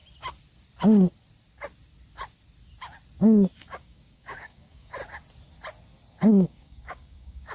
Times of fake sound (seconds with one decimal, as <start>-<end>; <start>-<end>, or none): 3.6-5.0; 6.3-7.5